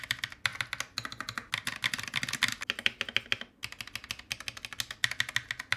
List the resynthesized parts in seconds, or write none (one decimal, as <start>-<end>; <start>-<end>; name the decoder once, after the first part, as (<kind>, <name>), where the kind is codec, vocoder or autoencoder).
none